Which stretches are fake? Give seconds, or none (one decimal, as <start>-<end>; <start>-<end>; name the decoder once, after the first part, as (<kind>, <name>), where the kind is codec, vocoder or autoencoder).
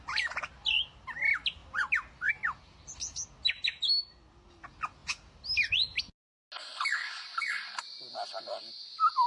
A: none